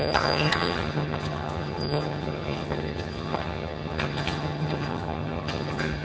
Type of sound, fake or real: fake